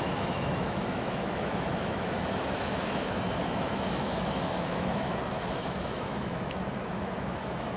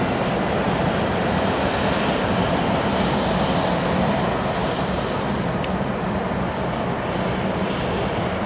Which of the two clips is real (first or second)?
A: second